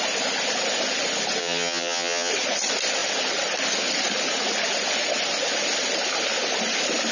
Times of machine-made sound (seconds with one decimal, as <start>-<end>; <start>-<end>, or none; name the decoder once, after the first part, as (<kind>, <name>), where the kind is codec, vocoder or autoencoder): 1.4-2.3 (vocoder, HiFi-GAN)